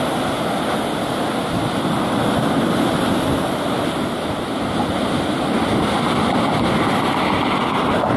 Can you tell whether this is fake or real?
real